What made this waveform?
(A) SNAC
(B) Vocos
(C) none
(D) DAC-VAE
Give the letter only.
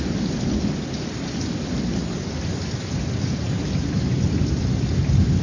C